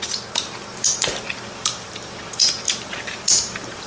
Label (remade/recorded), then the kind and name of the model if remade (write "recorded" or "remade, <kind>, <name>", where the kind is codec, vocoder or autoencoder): remade, vocoder, BigVGAN v2